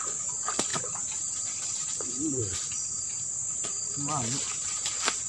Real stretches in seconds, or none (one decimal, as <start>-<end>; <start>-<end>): 0.0-0.7; 2.4-3.4